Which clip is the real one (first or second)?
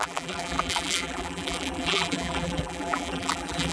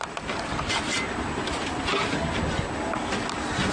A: second